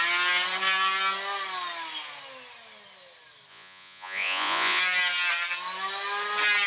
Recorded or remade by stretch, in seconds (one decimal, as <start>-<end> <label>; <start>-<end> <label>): 0.0-3.5 recorded; 3.5-4.8 remade; 4.8-6.7 recorded